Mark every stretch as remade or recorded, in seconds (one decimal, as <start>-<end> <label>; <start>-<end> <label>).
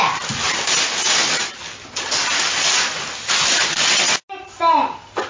0.0-5.3 recorded